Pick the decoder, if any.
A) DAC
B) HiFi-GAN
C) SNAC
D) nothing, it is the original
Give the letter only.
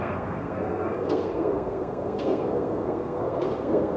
C